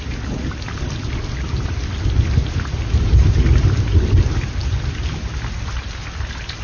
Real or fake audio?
real